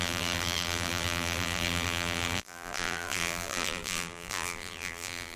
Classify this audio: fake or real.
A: fake